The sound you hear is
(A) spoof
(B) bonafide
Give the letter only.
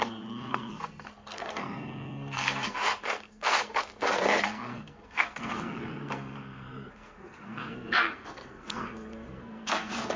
A